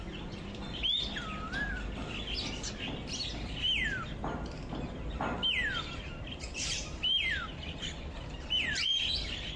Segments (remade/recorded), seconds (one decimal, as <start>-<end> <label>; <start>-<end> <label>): 0.0-6.1 recorded; 6.1-7.8 remade; 7.8-9.6 recorded